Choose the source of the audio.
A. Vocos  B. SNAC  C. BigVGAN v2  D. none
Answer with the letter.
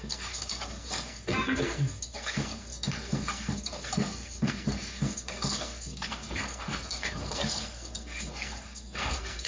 B